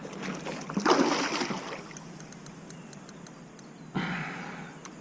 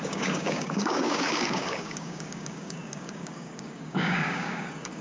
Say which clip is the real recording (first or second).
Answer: first